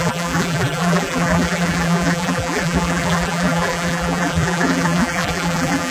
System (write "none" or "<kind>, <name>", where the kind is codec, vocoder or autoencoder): vocoder, BigVGAN v2